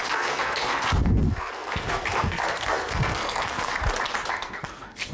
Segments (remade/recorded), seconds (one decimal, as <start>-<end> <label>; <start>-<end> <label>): 0.0-3.7 remade; 3.7-4.3 recorded; 4.3-5.1 remade